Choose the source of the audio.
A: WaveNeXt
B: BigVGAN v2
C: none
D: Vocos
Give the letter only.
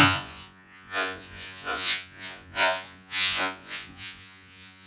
D